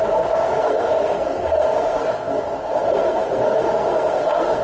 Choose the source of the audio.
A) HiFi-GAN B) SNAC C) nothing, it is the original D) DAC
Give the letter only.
B